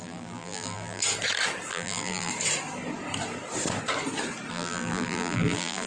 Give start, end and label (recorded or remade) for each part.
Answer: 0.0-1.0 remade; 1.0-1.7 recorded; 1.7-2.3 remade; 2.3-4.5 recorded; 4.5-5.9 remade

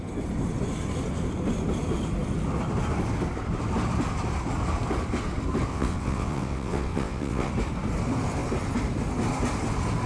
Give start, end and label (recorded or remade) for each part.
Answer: 0.0-5.7 recorded; 5.7-7.5 remade; 7.5-10.1 recorded

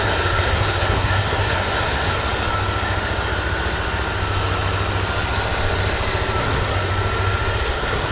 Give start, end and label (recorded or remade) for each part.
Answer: 0.0-2.2 remade; 2.2-6.4 recorded; 6.4-6.9 remade; 6.9-7.6 recorded; 7.6-8.1 remade

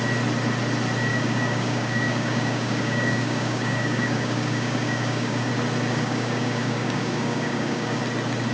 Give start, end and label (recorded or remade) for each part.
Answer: 0.0-1.1 recorded; 1.1-5.5 remade; 5.5-5.9 recorded; 5.9-8.0 remade; 8.0-8.5 recorded